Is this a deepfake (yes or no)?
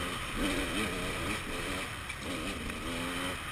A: no